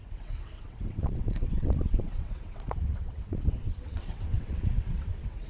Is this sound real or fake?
fake